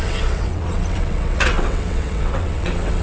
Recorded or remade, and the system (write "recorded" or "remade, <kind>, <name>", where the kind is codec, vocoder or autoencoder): remade, vocoder, WaveNeXt